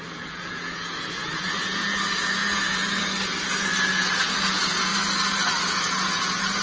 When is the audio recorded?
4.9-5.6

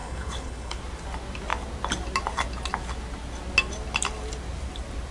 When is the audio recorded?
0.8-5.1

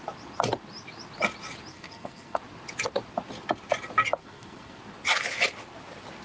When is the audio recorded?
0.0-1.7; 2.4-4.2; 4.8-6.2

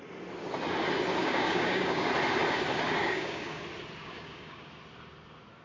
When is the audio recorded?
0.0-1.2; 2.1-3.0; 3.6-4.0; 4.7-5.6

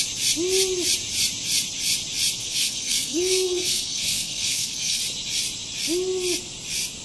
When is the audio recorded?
0.0-2.4; 5.0-7.0

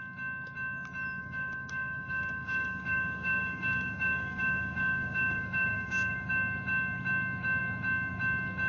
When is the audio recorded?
0.0-1.2; 6.3-8.7

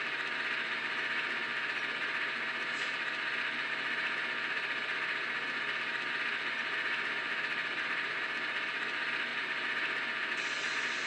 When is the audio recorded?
0.0-11.1

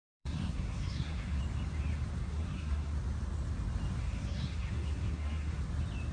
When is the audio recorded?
1.4-2.2; 2.9-4.0; 5.6-6.1